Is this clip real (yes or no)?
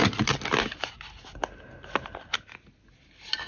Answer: yes